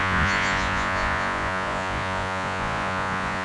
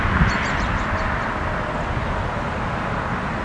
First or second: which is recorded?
second